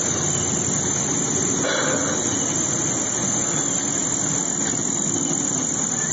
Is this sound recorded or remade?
recorded